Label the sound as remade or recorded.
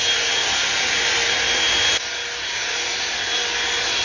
recorded